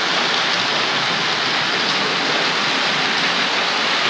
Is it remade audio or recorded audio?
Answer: recorded